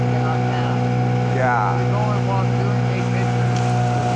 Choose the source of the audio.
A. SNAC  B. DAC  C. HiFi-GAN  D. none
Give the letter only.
D